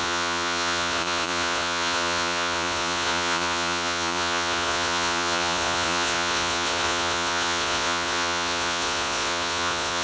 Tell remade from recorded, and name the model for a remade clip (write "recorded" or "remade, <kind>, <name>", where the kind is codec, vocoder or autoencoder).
remade, vocoder, Vocos